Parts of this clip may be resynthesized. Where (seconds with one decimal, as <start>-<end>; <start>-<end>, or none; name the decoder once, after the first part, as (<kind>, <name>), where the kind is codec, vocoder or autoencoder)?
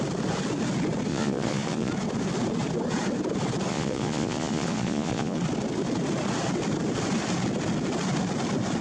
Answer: 1.1-1.9 (vocoder, Vocos); 3.7-5.4